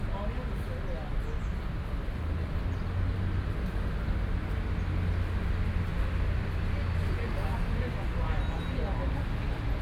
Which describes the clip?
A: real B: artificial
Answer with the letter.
A